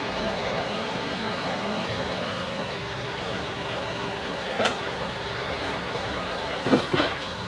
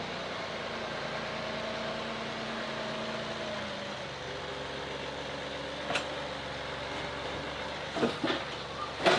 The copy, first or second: first